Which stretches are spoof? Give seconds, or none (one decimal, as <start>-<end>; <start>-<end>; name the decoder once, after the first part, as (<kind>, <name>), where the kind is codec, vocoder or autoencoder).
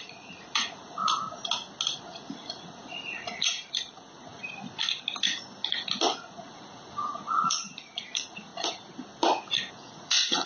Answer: 0.0-1.0 (vocoder, Vocos); 2.0-4.4; 6.1-8.5; 9.7-10.5